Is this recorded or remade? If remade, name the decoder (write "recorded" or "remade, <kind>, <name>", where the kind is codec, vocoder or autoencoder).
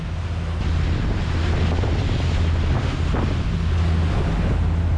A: recorded